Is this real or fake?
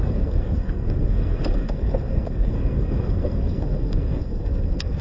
fake